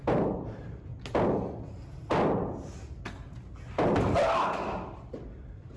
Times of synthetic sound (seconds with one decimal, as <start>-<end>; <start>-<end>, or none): 0.0-0.9; 4.4-5.8